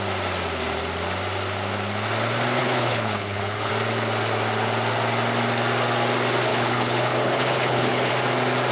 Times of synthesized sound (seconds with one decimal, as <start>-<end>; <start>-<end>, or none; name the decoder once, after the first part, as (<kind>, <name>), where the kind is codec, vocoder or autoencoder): 2.6-3.7 (codec, HILCodec); 6.5-8.1